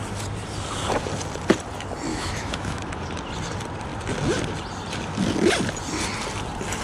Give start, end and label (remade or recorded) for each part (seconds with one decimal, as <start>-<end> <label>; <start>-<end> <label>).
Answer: 0.0-2.1 recorded; 2.1-3.0 remade; 3.0-6.8 recorded